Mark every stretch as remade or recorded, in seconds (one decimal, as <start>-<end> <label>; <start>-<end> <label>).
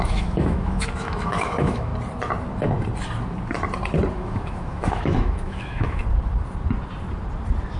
0.0-1.9 remade; 1.9-4.1 recorded; 4.1-6.0 remade; 6.0-7.8 recorded